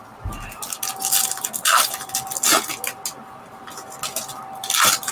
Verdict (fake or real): real